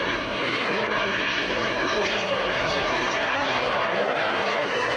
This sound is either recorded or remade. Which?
remade